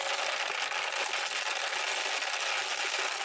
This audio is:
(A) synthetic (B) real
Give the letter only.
B